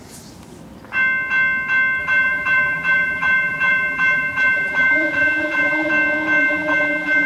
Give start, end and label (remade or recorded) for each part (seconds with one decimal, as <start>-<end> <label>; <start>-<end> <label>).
0.0-2.0 recorded; 2.0-5.9 remade; 5.9-6.4 recorded; 6.4-7.3 remade